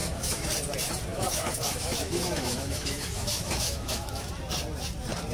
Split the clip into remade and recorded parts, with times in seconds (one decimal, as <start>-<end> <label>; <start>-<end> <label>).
0.0-0.5 remade; 0.5-1.1 recorded; 1.1-4.3 remade; 4.3-5.3 recorded